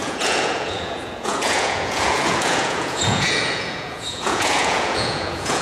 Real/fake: fake